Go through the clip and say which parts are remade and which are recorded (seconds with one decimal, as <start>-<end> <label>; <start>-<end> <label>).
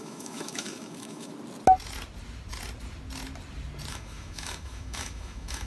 0.0-1.3 remade; 1.3-3.9 recorded; 3.9-5.7 remade